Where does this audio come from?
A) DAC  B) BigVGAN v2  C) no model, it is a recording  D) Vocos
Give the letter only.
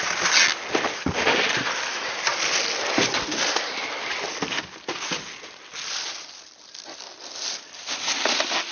C